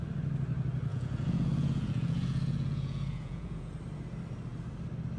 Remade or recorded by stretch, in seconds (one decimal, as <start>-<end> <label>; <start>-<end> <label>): 0.0-0.9 recorded; 0.9-3.7 remade; 3.7-5.2 recorded